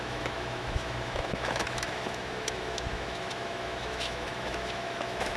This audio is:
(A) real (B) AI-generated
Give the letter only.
B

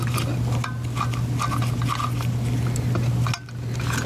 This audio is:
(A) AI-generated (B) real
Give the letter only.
B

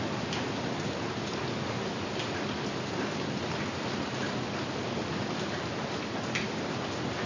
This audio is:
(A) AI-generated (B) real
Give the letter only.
B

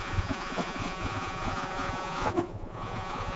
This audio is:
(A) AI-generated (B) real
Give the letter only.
A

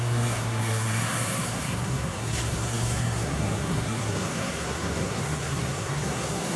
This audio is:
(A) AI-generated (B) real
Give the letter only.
A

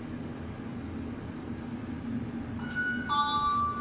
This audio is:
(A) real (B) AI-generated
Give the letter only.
A